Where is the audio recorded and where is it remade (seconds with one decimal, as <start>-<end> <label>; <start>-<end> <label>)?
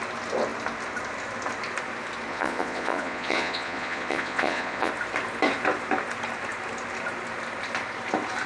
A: 0.0-2.3 recorded; 2.3-4.9 remade; 4.9-8.5 recorded